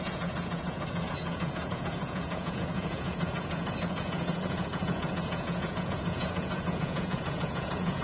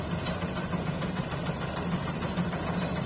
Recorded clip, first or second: second